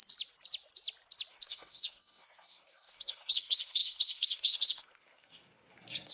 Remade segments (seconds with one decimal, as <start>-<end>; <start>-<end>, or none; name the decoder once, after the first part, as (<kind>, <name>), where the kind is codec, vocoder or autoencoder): 1.3-6.1 (codec, SNAC)